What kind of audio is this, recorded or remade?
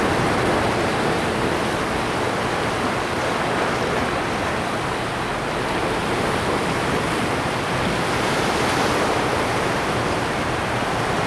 recorded